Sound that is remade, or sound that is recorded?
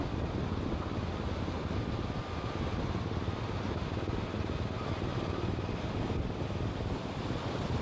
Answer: recorded